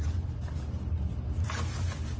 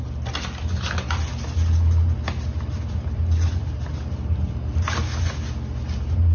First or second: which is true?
second